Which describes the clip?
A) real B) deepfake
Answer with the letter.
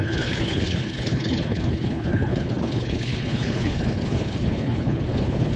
B